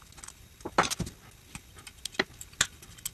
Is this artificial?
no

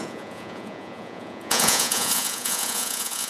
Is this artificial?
yes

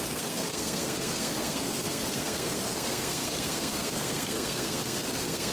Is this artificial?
yes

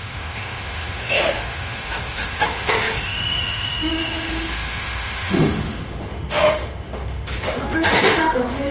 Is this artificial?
yes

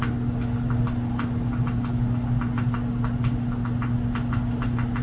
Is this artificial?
no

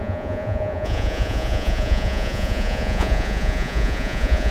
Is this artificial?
yes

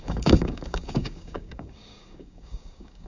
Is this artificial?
yes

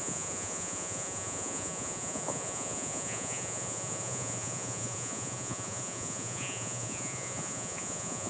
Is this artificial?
yes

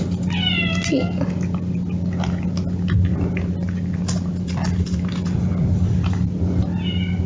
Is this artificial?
no